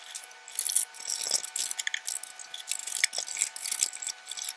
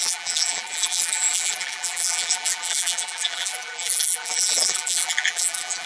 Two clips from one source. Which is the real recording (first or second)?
first